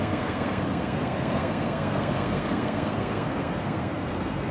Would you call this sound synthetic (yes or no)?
yes